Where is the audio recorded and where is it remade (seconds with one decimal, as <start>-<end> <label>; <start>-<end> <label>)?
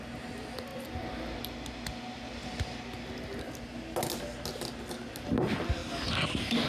0.0-6.7 recorded